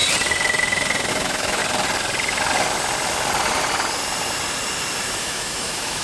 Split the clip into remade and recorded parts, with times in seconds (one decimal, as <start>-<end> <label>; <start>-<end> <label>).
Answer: 0.0-1.1 recorded; 1.1-1.6 remade; 1.6-5.2 recorded; 5.2-6.0 remade